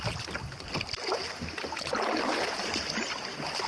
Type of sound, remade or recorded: recorded